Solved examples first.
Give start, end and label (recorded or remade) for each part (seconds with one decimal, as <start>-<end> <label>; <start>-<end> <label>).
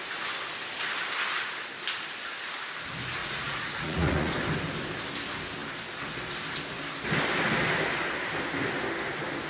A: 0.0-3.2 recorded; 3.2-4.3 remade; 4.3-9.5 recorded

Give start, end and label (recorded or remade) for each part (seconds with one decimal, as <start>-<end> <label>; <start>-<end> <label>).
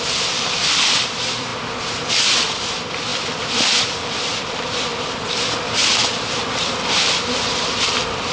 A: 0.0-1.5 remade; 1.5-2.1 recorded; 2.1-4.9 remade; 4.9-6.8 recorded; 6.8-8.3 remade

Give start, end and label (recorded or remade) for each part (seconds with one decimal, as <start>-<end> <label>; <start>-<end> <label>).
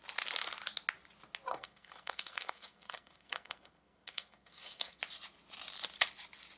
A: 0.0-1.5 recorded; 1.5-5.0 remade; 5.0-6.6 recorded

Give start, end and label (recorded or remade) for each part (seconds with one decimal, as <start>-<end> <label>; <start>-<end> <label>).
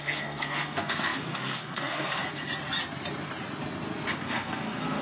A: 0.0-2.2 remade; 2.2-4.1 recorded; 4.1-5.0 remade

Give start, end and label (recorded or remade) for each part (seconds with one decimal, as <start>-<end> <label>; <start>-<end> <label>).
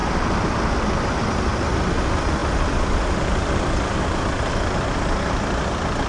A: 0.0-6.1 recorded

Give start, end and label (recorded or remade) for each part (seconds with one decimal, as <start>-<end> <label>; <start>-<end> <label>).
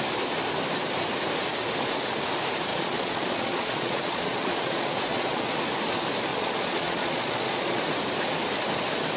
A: 0.0-2.7 recorded; 2.7-5.4 remade; 5.4-6.3 recorded; 6.3-7.8 remade; 7.8-9.2 recorded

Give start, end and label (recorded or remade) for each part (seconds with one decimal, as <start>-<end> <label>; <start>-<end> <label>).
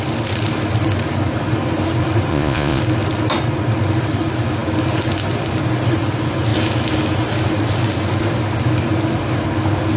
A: 0.0-2.3 recorded; 2.3-2.8 remade; 2.8-10.0 recorded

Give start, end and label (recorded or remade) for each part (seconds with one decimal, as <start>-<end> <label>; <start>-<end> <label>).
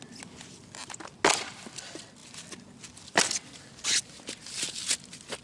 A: 0.0-5.4 recorded